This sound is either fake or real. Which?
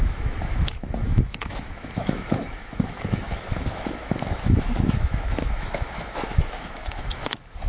fake